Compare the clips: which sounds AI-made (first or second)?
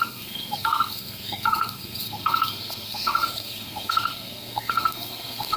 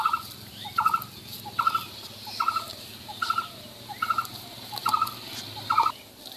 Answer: first